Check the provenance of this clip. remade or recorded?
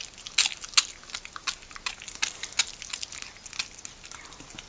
recorded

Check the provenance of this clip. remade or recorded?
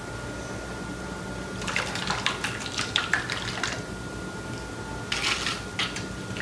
recorded